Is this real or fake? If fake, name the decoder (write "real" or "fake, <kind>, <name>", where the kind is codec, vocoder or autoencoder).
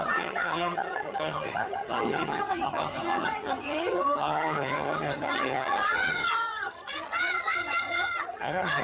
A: fake, vocoder, HiFi-GAN